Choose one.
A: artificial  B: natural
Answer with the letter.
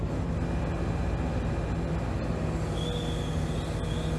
B